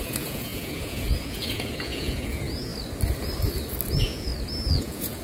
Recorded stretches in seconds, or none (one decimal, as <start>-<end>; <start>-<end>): 2.7-3.9; 4.3-4.8

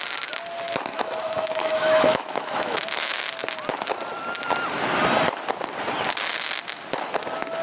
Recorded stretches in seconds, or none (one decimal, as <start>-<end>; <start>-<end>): 0.0-0.9; 3.2-7.6

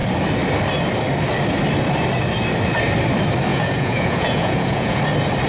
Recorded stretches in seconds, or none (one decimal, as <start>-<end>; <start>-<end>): 0.0-3.5; 5.0-5.5

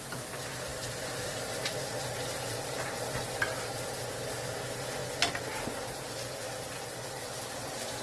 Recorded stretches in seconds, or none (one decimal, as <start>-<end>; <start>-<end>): 0.0-8.0

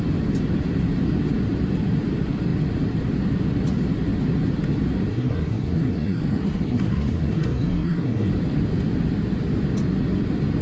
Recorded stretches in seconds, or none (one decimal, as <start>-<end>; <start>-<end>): 0.0-5.1; 8.3-10.6